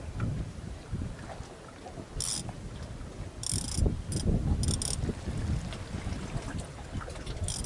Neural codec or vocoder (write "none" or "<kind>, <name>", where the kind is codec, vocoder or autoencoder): none